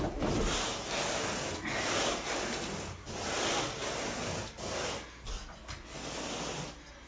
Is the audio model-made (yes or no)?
no